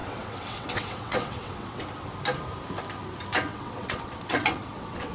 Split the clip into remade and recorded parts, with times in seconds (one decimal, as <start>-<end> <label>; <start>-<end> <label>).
0.0-1.8 remade; 1.8-3.5 recorded; 3.5-5.1 remade